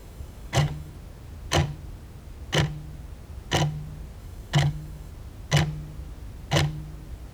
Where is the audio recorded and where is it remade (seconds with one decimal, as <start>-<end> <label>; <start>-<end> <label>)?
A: 0.0-0.9 remade; 0.9-4.2 recorded; 4.2-5.1 remade; 5.1-7.3 recorded